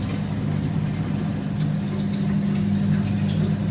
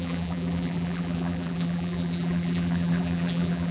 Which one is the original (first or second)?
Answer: first